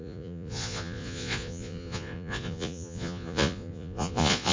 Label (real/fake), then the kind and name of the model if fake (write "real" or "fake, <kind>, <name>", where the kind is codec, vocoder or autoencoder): fake, vocoder, Vocos